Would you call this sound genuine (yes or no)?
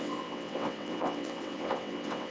no